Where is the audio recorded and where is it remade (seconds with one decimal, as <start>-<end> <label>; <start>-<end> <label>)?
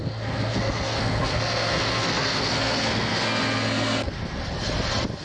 0.0-4.4 remade; 4.4-5.2 recorded